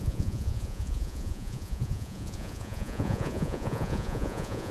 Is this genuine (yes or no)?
no